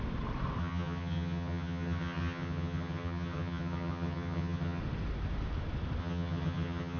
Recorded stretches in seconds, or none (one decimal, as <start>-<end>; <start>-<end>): 0.0-0.6; 4.8-6.0